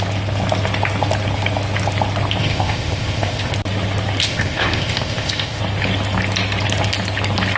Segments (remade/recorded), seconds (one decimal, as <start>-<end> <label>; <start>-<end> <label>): 0.0-2.4 recorded; 2.4-3.5 remade; 3.5-4.2 recorded; 4.2-5.6 remade; 5.6-7.6 recorded